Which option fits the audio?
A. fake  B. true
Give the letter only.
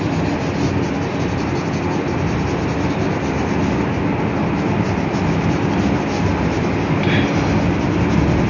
B